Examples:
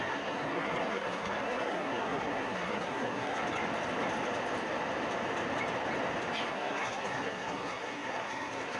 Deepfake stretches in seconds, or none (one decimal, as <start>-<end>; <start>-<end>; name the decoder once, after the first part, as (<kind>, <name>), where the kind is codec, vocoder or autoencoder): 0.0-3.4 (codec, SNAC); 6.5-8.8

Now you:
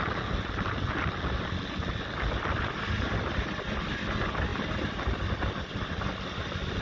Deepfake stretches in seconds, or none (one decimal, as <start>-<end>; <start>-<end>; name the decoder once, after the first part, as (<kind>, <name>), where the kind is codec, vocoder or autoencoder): none

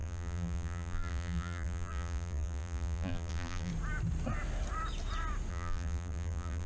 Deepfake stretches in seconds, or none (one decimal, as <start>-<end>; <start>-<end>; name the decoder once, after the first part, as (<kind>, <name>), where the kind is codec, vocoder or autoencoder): 0.0-3.7 (vocoder, BigVGAN v2); 5.5-6.7

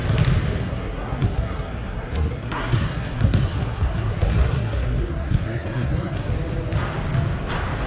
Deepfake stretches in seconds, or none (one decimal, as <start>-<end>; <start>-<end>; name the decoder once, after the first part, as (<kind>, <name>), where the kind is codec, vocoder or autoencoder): 0.6-6.3 (codec, SNAC)

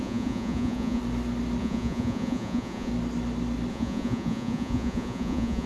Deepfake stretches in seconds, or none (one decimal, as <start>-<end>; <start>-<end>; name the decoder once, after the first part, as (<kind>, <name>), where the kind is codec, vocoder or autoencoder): 0.0-1.0 (vocoder, Vocos); 1.6-2.9; 3.7-5.7

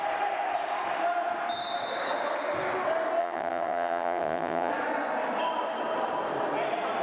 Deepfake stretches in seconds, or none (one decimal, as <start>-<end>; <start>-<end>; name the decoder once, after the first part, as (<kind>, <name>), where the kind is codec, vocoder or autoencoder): 3.2-4.7 (vocoder, HiFi-GAN)

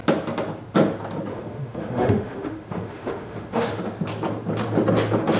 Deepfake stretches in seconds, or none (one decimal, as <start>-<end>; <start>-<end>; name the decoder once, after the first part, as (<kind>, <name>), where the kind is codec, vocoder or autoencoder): 1.3-3.8 (autoencoder, DAC-VAE)